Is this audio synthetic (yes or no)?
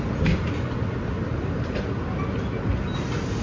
no